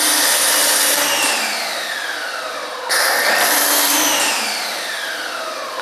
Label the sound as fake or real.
real